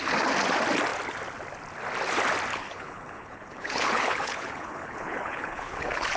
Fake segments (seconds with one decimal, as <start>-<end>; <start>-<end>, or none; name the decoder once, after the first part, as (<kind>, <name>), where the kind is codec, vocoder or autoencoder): 2.5-6.2 (codec, HILCodec)